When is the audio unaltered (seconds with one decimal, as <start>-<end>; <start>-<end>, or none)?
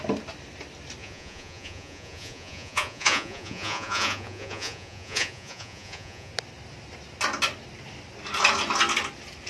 0.0-1.0; 6.3-9.5